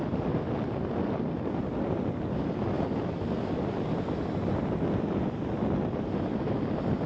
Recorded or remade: recorded